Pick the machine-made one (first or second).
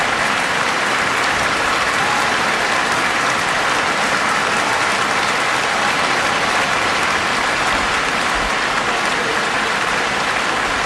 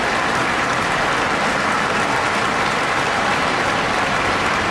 first